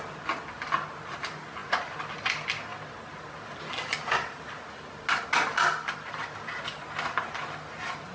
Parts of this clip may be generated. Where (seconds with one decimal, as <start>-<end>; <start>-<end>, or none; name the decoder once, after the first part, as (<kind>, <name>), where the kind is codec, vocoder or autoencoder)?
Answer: none